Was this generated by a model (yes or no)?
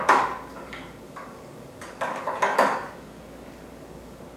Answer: yes